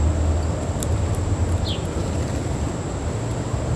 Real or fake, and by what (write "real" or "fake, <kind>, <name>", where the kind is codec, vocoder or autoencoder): real